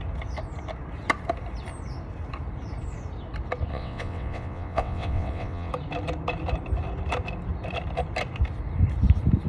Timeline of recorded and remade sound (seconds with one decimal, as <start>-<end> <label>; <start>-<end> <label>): 0.0-3.7 recorded; 3.7-5.7 remade; 5.7-9.5 recorded